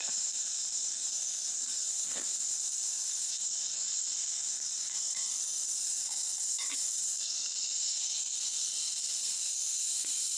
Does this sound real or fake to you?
fake